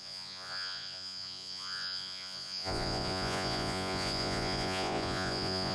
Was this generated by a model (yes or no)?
yes